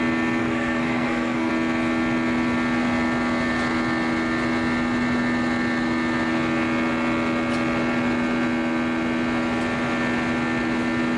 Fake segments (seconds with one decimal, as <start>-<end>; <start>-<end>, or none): 0.4-1.5

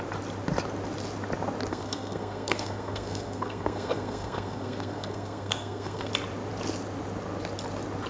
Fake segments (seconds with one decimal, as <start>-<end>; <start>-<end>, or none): 1.7-6.1

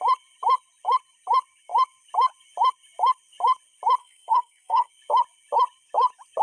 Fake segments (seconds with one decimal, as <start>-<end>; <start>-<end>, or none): 4.0-4.9

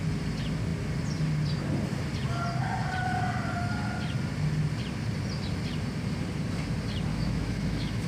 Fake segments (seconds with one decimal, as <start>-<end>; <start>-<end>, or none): 7.1-8.1

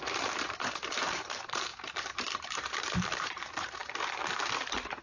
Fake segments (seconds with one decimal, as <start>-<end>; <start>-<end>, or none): 0.0-3.8

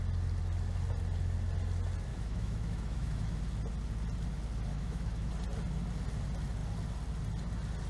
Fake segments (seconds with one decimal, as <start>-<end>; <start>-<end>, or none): 2.1-3.4; 4.7-5.3

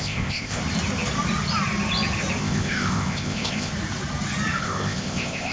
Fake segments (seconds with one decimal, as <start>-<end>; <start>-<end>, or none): 0.0-0.6; 2.4-3.7; 4.6-5.5

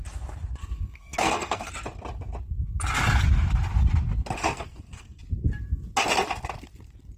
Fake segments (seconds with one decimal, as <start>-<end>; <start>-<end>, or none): 0.6-1.7; 4.5-5.2